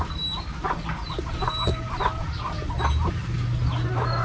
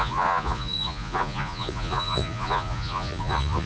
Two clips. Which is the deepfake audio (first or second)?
second